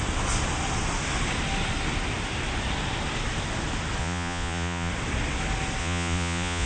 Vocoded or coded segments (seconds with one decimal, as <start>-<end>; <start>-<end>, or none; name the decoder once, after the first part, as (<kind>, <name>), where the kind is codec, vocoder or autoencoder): 4.0-4.9 (vocoder, Vocos); 5.8-6.7